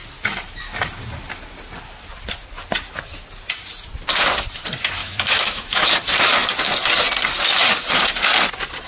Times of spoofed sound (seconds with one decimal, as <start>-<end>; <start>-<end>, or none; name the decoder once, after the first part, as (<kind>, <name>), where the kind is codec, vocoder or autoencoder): 5.0-5.9 (autoencoder, DAC-VAE)